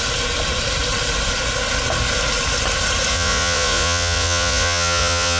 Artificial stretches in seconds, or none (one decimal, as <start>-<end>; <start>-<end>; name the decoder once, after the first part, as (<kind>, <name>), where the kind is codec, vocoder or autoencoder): 3.1-5.4 (vocoder, Vocos)